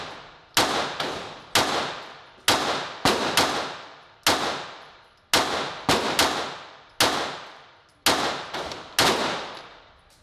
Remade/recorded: recorded